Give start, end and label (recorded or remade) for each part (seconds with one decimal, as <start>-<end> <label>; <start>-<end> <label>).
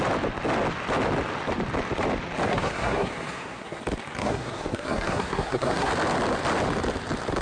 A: 0.0-2.5 recorded; 2.5-3.8 remade; 3.8-4.2 recorded; 4.2-5.9 remade; 5.9-7.4 recorded